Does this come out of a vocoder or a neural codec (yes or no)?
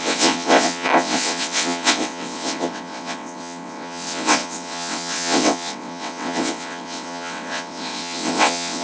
yes